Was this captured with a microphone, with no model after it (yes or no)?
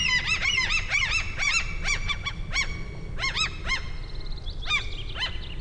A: yes